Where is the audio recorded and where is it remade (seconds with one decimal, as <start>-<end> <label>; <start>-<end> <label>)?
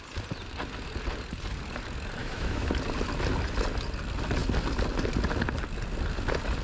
0.0-2.2 recorded; 2.2-2.7 remade; 2.7-6.6 recorded